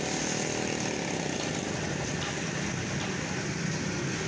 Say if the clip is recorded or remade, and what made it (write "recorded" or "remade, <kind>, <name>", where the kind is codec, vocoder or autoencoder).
recorded